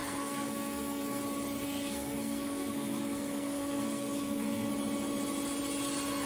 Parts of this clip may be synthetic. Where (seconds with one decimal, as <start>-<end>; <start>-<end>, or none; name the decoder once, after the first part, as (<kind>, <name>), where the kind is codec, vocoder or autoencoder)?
0.0-1.2 (codec, SNAC); 1.6-4.7